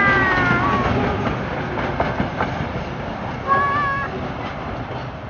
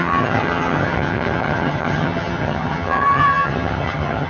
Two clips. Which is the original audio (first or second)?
first